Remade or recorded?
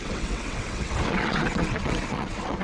remade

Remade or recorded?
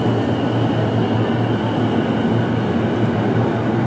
recorded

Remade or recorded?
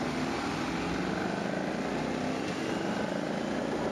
recorded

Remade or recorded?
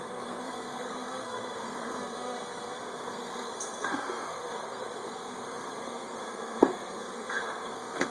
remade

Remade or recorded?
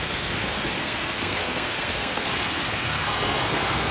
remade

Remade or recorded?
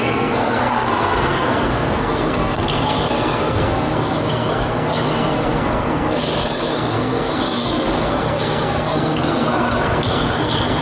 remade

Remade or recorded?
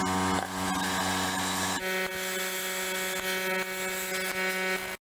recorded